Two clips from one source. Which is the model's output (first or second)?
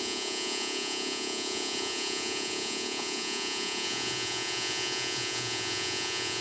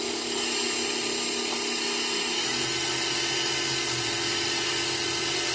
first